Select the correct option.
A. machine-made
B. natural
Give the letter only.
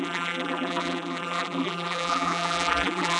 A